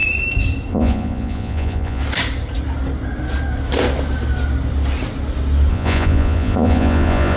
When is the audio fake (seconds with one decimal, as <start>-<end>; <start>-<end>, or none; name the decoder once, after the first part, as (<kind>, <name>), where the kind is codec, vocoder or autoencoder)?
0.7-2.0 (vocoder, Vocos); 5.7-7.4